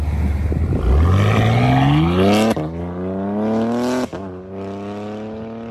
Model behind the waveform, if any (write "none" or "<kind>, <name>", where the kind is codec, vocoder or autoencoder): none